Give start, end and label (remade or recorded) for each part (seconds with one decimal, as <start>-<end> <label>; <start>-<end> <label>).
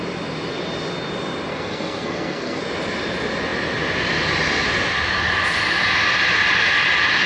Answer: 0.0-1.5 recorded; 1.5-2.6 remade; 2.6-7.3 recorded